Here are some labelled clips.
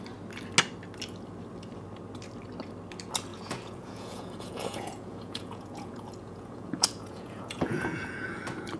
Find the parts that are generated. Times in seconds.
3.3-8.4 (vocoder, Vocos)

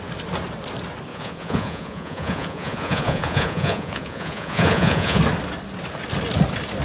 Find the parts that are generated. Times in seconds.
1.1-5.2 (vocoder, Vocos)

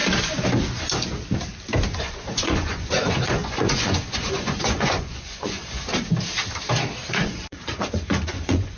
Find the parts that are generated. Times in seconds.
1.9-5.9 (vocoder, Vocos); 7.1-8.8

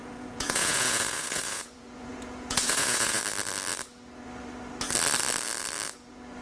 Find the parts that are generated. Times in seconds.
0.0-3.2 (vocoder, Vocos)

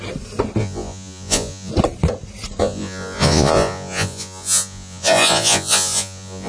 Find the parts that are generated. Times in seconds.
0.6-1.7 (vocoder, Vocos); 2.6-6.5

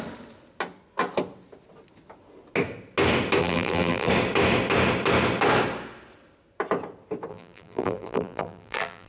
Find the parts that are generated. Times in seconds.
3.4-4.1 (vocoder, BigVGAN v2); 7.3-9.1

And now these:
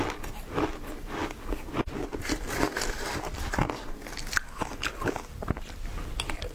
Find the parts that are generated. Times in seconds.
none

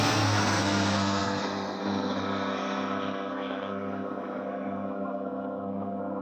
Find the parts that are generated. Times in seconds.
0.0-6.2 (codec, SNAC)